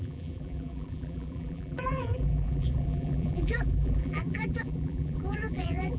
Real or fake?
fake